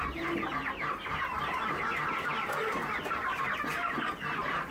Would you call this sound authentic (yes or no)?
yes